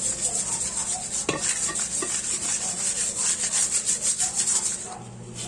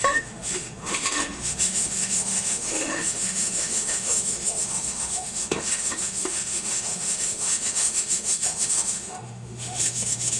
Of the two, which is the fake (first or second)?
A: second